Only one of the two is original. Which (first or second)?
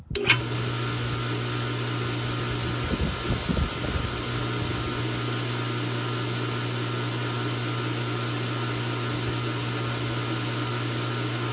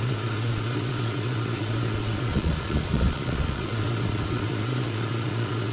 first